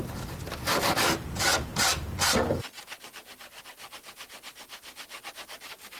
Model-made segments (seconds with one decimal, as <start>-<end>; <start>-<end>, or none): 0.0-1.7; 5.3-6.0